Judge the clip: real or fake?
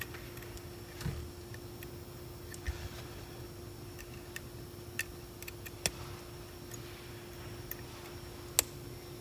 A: real